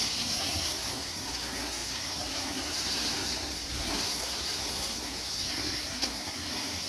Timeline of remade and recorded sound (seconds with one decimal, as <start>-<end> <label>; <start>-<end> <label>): 0.0-6.9 remade